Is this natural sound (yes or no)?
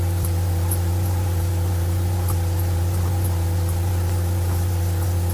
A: yes